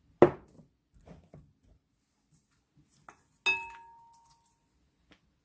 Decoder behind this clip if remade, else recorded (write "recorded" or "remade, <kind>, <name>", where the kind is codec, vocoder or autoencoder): recorded